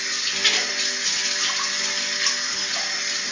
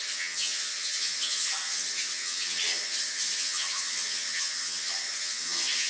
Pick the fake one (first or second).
second